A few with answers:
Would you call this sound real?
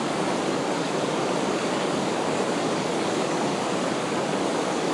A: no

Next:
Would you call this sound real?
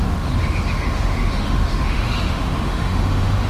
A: no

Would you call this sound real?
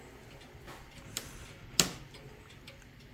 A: yes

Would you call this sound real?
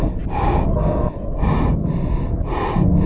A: yes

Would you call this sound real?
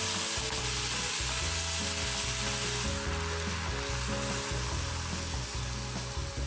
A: yes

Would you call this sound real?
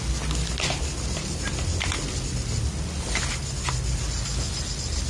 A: yes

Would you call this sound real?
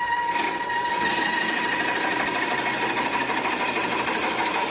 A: yes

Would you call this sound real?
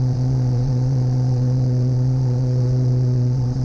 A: no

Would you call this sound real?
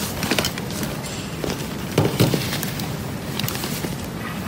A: no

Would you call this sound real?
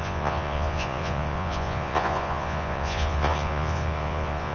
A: no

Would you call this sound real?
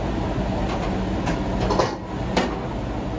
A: yes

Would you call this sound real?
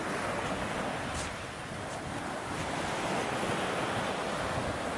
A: yes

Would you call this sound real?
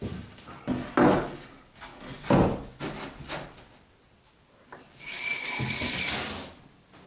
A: yes